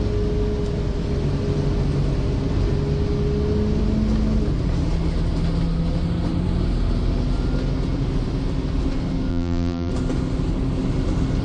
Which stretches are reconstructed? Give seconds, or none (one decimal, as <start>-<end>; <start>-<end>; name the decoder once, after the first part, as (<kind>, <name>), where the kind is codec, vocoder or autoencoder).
9.3-9.9 (vocoder, BigVGAN v2)